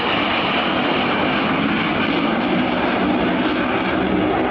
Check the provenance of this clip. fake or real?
real